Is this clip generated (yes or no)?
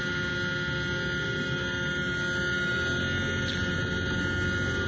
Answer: no